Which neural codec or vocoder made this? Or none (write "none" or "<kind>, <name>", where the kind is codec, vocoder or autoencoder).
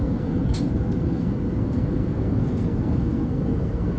codec, SNAC